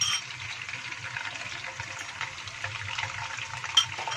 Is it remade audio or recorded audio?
recorded